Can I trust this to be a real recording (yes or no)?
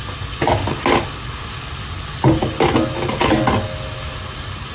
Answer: yes